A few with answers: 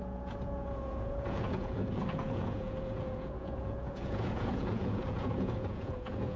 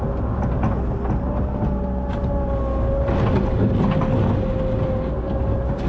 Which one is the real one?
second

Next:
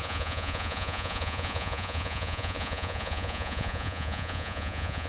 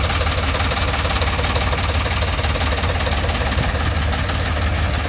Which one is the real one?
second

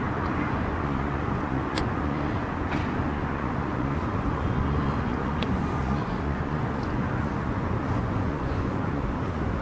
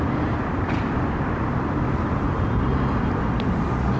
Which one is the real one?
second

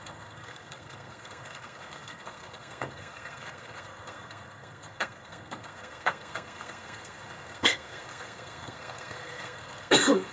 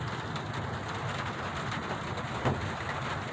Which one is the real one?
second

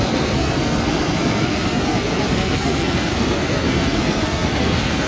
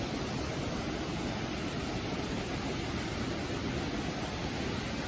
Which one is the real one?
second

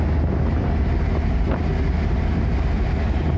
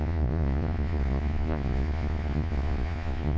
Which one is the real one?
first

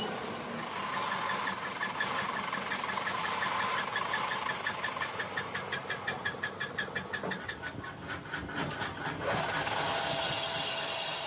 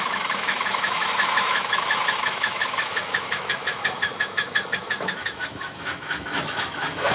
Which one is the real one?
first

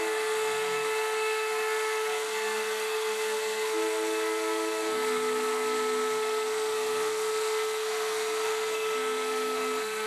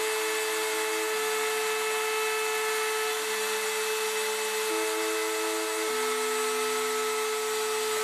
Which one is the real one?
second